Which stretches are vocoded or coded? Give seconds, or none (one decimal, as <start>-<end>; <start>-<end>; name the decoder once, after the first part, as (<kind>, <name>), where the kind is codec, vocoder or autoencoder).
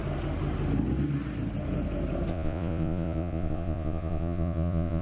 2.3-5.0 (vocoder, Vocos)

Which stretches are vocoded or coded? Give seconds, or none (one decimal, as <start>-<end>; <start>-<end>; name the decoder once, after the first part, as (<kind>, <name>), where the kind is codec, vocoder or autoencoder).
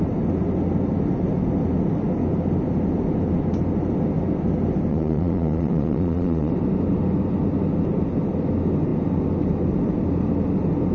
4.9-6.5 (vocoder, Vocos)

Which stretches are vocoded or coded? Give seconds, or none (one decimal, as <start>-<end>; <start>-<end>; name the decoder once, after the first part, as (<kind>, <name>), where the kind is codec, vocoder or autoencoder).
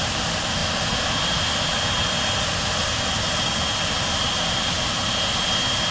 none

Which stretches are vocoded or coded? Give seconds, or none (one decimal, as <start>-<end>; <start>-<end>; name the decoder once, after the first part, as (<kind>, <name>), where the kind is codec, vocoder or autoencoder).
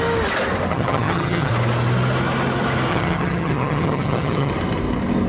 0.7-1.5 (vocoder, HiFi-GAN); 2.9-4.5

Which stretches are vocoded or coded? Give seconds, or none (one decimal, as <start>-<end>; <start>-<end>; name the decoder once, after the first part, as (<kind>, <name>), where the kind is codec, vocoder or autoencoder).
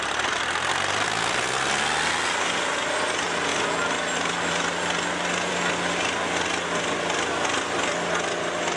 none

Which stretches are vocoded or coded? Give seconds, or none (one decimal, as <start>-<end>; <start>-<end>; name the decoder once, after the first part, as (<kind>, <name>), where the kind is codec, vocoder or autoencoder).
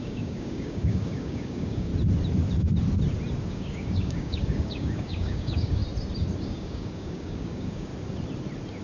0.0-1.9 (codec, DAC); 3.4-5.8; 6.4-7.9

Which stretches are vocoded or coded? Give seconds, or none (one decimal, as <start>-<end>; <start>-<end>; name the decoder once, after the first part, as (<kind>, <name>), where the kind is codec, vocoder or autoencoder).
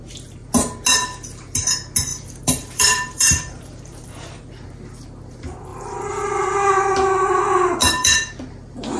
2.1-4.4 (vocoder, BigVGAN v2); 5.7-6.4; 7.8-8.3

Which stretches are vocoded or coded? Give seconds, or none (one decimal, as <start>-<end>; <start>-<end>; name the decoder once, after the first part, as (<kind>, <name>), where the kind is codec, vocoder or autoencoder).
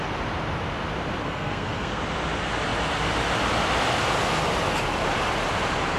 1.2-2.0 (codec, SNAC)